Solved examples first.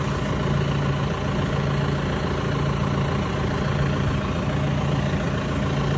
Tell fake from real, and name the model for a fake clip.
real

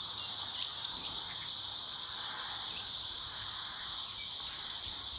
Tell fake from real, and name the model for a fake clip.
real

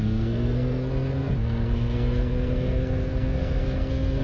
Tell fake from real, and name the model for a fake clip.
fake, codec, SNAC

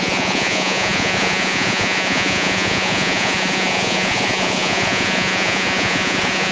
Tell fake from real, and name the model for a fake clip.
fake, vocoder, Vocos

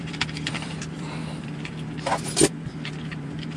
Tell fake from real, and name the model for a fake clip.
fake, vocoder, BigVGAN v2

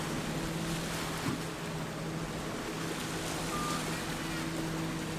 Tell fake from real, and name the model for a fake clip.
real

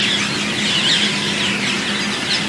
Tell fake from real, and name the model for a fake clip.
real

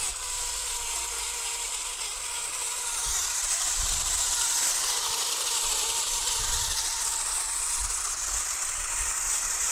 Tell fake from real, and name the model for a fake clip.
real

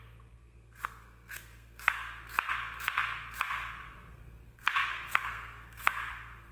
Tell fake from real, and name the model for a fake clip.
fake, codec, SNAC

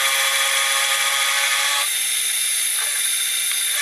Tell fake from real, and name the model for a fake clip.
real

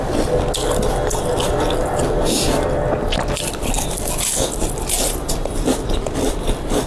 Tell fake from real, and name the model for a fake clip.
real